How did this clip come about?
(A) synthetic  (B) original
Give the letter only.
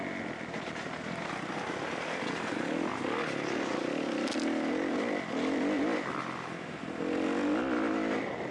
B